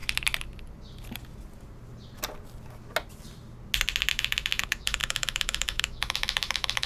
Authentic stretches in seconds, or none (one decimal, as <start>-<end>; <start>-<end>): 0.0-4.1